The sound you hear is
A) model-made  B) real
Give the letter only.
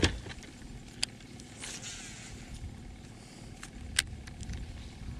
B